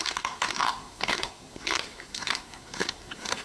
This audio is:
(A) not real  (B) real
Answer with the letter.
A